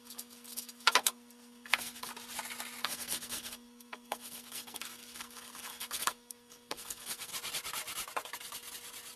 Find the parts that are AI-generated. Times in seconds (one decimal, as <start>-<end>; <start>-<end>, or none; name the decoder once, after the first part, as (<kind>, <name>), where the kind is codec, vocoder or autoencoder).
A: 0.0-2.1 (codec, SNAC); 2.8-7.3